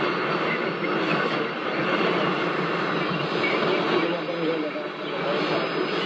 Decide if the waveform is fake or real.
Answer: real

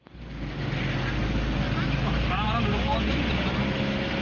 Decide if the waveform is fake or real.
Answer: real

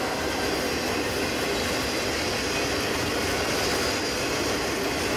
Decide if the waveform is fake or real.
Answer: real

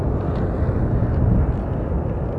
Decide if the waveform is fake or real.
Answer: real